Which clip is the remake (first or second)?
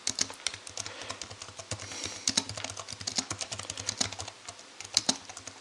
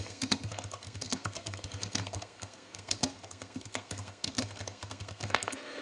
second